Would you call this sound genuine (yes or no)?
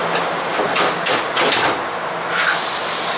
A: yes